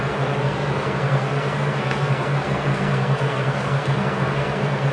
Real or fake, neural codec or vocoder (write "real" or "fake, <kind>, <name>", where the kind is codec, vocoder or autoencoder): fake, codec, SNAC